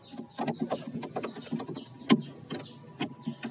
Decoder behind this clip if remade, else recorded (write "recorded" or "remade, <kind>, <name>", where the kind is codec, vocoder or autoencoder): recorded